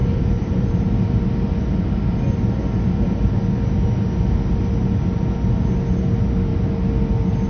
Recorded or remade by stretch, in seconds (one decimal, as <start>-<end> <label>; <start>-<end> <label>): 0.0-1.1 remade; 1.1-7.5 recorded

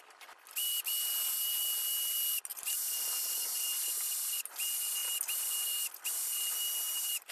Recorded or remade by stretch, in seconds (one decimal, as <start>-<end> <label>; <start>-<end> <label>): 0.0-2.5 recorded; 2.5-3.3 remade; 3.3-5.0 recorded; 5.0-5.9 remade; 5.9-7.3 recorded

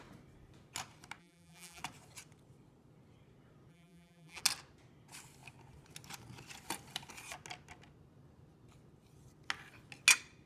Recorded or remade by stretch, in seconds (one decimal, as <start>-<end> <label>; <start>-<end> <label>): 0.0-1.2 recorded; 1.2-1.8 remade; 1.8-3.7 recorded; 3.7-4.4 remade; 4.4-10.5 recorded

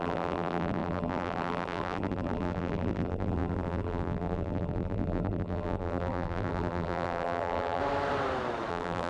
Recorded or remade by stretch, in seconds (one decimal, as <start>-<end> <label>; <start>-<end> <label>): 0.0-7.8 remade; 7.8-8.7 recorded; 8.7-9.1 remade